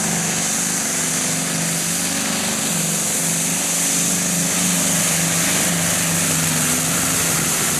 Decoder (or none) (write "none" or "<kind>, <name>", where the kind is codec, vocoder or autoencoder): none